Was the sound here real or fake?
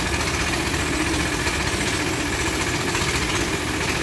real